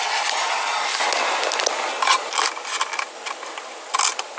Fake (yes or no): no